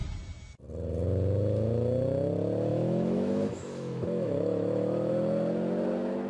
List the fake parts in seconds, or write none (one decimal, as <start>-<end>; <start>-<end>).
2.7-5.1